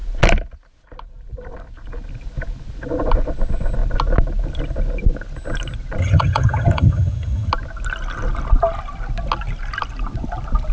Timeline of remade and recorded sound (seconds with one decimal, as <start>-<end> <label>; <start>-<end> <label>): 0.0-6.0 recorded; 6.0-7.5 remade; 7.5-10.7 recorded